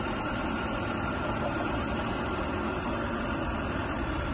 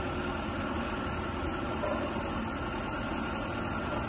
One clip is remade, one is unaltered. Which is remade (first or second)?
first